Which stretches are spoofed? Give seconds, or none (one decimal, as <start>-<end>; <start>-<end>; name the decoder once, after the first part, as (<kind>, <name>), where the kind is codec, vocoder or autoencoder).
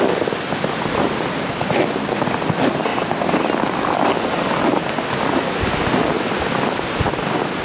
none